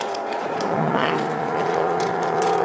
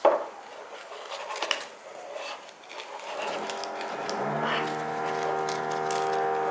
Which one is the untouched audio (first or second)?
second